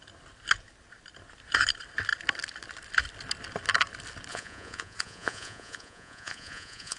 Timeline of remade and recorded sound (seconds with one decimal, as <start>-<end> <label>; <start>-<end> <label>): 0.0-4.3 recorded; 4.3-7.0 remade